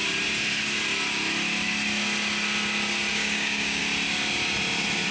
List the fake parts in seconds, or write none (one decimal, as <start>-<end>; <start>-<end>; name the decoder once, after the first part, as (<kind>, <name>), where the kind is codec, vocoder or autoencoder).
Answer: 3.1-3.8 (codec, DAC)